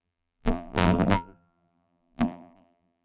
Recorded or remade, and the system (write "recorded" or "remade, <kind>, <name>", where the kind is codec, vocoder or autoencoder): remade, vocoder, BigVGAN v2